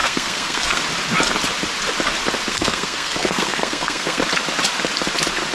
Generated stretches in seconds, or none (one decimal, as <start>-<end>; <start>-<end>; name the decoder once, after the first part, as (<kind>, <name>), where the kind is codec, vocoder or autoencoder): 0.0-0.8 (codec, SNAC); 2.5-4.2